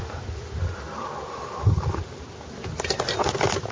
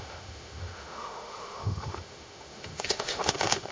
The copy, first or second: second